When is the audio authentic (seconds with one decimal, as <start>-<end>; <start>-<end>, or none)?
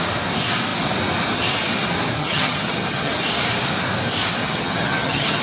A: 0.0-2.2; 3.1-4.4